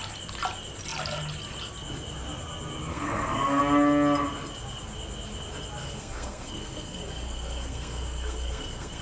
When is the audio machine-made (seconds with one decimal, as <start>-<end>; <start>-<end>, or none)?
2.9-3.6; 5.8-9.0